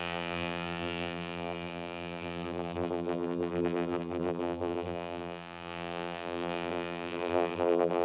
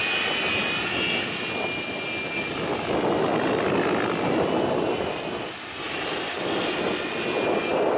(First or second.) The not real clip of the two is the first